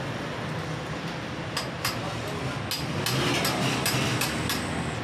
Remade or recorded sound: recorded